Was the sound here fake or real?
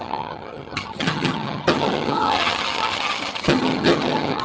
fake